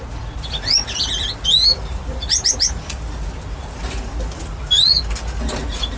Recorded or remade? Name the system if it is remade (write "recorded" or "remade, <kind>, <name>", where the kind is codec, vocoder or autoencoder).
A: recorded